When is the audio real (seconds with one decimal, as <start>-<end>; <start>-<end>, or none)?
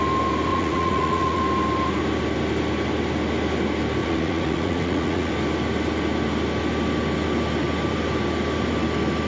0.0-0.5; 1.4-4.0; 5.3-9.3